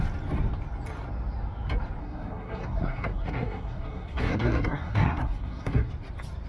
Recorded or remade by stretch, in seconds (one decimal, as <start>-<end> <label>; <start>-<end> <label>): 0.0-2.0 recorded; 2.0-5.9 remade; 5.9-6.5 recorded